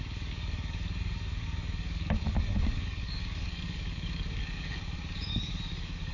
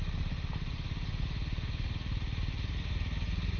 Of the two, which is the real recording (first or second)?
second